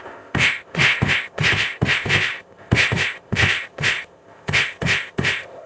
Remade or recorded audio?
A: remade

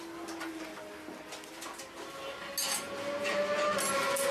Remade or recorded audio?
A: recorded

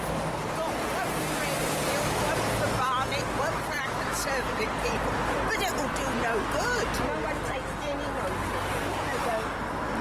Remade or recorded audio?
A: recorded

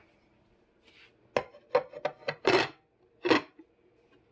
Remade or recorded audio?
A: recorded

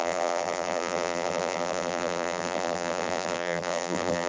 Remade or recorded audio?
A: remade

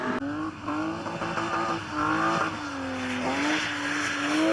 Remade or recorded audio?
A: recorded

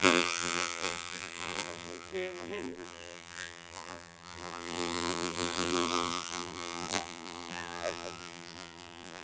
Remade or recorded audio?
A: remade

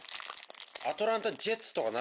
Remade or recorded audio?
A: recorded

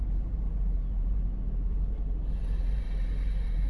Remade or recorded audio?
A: remade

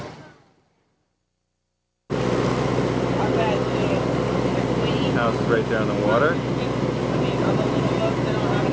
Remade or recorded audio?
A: recorded